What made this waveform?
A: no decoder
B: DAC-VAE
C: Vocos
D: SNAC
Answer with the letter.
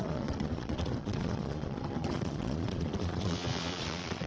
C